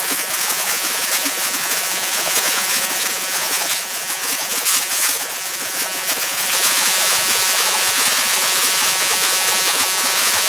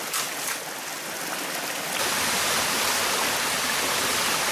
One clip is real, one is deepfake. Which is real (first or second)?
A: second